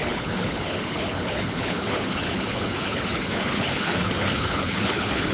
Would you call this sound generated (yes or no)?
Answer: yes